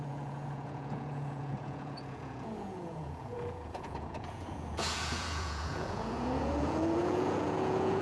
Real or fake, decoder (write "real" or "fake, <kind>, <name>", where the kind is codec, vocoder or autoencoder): fake, vocoder, Vocos